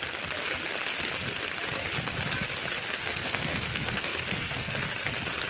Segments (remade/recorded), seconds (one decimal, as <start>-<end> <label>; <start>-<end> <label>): 0.0-3.0 recorded; 3.0-4.8 remade; 4.8-5.5 recorded